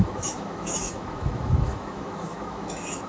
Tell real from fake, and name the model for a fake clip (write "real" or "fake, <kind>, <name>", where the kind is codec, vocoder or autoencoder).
fake, autoencoder, DAC-VAE